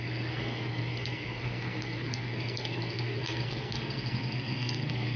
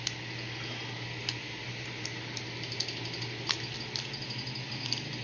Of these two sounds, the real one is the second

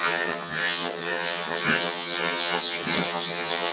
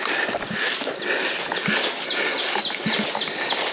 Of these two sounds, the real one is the second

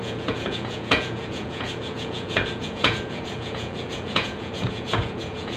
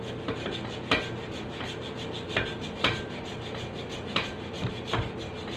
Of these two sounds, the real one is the second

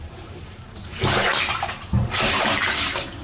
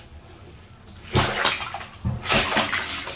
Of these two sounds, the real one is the second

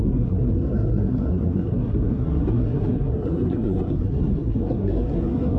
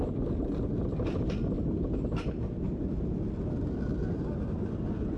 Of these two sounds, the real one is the second